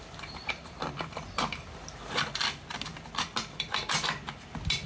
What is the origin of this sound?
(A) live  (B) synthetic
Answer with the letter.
A